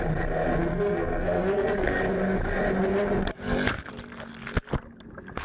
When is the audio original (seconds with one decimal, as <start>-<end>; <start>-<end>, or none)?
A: 0.0-0.7; 2.0-5.4